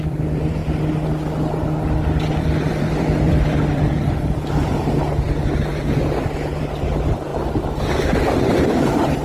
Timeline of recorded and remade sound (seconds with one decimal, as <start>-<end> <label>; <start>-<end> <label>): 0.0-0.6 remade; 0.6-2.2 recorded; 2.2-5.4 remade; 5.4-6.6 recorded; 6.6-7.3 remade; 7.3-8.6 recorded; 8.6-9.2 remade